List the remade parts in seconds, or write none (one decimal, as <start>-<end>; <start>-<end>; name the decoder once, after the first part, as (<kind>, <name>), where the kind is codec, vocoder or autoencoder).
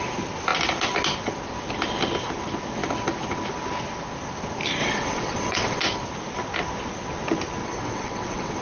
4.8-5.8 (vocoder, WaveNeXt); 7.6-8.6